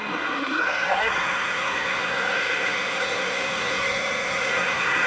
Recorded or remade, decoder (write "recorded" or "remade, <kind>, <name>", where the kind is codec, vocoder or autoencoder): remade, codec, SNAC